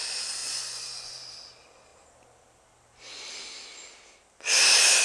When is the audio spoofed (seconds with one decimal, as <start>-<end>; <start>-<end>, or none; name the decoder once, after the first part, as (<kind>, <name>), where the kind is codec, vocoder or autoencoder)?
0.4-1.1 (vocoder, Vocos)